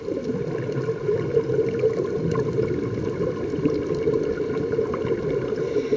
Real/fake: real